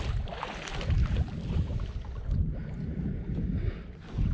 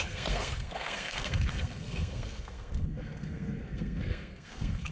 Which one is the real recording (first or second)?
first